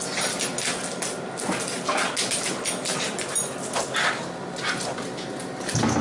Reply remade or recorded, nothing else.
recorded